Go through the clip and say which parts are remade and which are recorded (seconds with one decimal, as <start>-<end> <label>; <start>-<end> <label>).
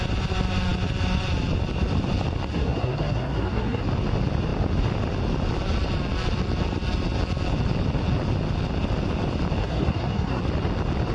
0.0-2.5 recorded; 2.5-3.8 remade; 3.8-9.6 recorded; 9.6-10.4 remade; 10.4-11.1 recorded